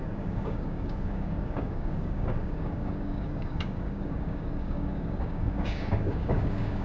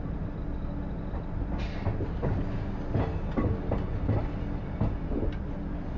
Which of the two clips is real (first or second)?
second